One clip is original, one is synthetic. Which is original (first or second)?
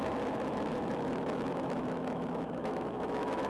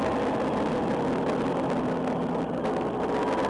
second